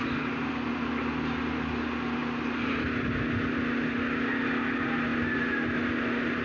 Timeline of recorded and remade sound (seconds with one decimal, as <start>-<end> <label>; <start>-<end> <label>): 0.0-6.4 recorded